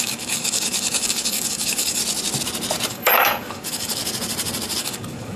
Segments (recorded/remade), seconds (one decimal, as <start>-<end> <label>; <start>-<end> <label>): 0.0-2.0 remade; 2.0-2.9 recorded; 2.9-4.0 remade; 4.0-4.8 recorded; 4.8-5.4 remade